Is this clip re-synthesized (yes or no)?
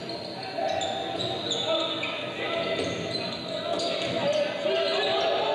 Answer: no